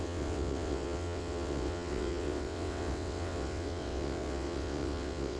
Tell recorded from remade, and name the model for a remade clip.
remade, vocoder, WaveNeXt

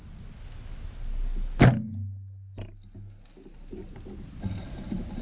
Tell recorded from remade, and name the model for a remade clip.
recorded